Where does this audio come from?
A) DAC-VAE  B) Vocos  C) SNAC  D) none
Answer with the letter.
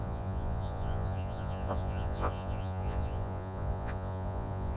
B